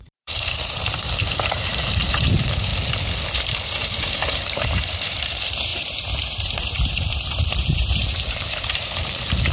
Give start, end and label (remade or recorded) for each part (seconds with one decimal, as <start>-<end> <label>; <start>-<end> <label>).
0.0-2.7 remade; 2.7-3.4 recorded; 3.4-9.5 remade

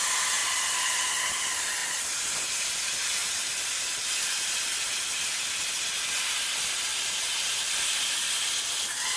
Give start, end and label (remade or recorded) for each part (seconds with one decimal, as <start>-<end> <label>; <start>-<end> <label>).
0.0-1.8 recorded; 1.8-2.8 remade; 2.8-3.2 recorded; 3.2-4.5 remade; 4.5-6.9 recorded; 6.9-8.4 remade; 8.4-9.2 recorded

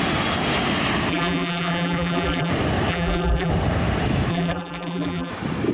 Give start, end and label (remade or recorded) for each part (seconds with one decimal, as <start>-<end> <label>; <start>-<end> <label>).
0.0-1.1 recorded; 1.1-2.5 remade; 2.5-2.9 recorded; 2.9-3.5 remade; 3.5-4.3 recorded; 4.3-5.3 remade; 5.3-5.7 recorded

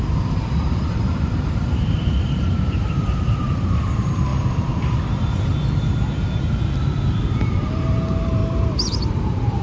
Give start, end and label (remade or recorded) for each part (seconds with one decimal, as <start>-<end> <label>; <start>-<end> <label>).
0.0-5.5 remade; 5.5-7.2 recorded; 7.2-8.4 remade; 8.4-9.0 recorded; 9.0-9.6 remade

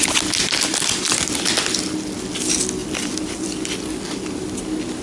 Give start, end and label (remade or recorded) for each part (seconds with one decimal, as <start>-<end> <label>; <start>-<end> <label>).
0.0-2.8 recorded; 2.8-3.7 remade; 3.7-5.0 recorded

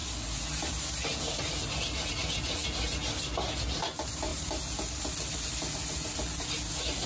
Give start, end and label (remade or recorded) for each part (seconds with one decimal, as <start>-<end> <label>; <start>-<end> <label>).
0.0-7.1 recorded

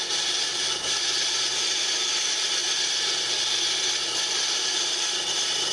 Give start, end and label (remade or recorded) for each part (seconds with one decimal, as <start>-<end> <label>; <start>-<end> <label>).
0.0-2.6 remade; 2.6-4.2 recorded; 4.2-5.7 remade